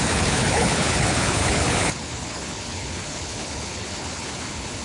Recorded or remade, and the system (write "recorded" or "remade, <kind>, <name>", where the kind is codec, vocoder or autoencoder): remade, codec, HILCodec